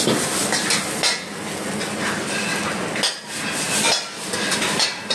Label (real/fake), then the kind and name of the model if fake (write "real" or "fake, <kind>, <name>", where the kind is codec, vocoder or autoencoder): real